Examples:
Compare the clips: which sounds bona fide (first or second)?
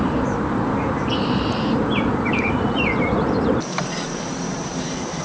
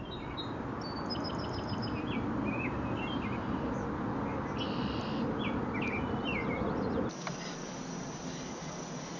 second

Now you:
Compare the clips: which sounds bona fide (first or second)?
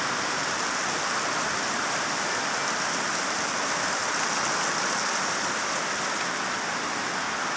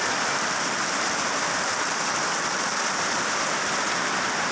first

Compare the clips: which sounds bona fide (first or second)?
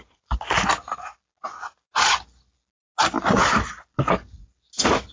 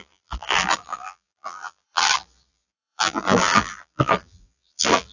first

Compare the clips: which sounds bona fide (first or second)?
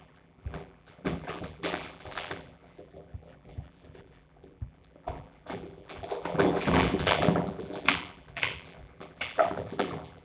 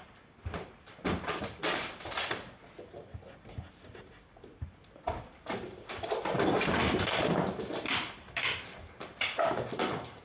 second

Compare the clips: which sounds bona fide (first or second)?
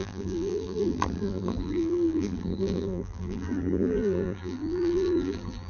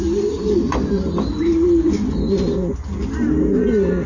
second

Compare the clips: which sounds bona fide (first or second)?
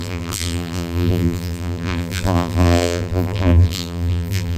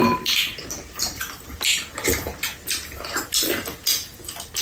second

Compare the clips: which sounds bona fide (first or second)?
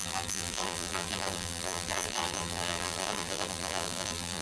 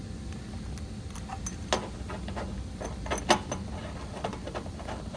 second